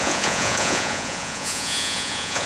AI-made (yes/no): yes